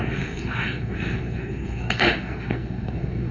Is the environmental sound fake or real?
fake